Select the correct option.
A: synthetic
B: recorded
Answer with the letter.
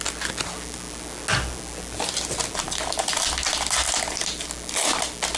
B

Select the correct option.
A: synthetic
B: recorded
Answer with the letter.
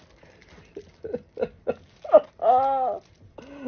B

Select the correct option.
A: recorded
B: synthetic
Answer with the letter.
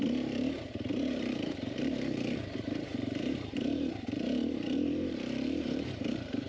B